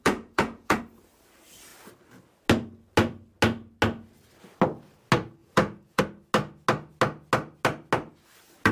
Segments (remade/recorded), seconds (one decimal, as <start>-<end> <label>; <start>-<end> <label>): 0.0-0.8 remade; 0.8-5.4 recorded; 5.4-6.0 remade; 6.0-8.7 recorded